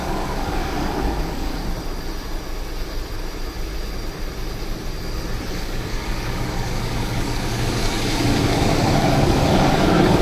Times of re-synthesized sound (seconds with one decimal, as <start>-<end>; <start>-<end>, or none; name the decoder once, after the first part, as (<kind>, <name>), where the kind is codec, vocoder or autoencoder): 0.0-1.6 (codec, DAC); 5.5-10.2